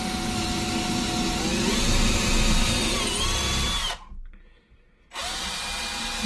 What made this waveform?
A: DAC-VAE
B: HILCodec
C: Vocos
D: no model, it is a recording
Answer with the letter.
D